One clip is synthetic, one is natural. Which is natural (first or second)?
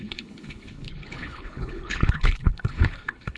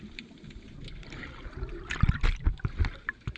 second